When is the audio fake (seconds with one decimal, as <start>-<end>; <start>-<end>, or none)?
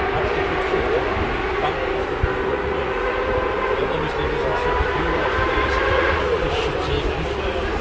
2.5-3.2; 5.6-6.4